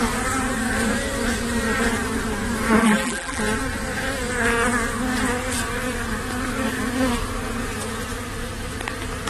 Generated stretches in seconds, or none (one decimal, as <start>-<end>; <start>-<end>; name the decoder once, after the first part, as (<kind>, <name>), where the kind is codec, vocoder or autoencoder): 2.8-3.4 (vocoder, BigVGAN v2)